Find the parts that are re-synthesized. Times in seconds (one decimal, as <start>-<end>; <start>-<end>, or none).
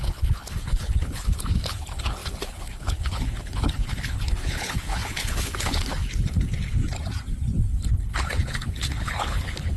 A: 0.0-6.8; 7.9-9.8